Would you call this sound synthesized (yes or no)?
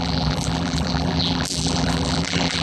yes